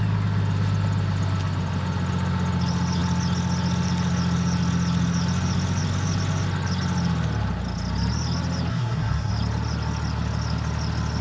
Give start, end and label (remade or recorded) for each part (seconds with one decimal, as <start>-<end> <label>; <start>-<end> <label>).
0.0-8.7 recorded; 8.7-9.3 remade; 9.3-11.2 recorded